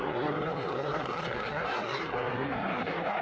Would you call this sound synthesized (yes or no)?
yes